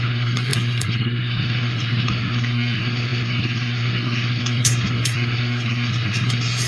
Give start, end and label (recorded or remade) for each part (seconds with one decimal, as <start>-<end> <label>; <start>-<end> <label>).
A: 0.0-6.7 remade